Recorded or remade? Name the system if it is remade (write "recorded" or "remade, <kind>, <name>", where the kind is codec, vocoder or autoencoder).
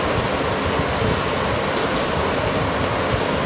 recorded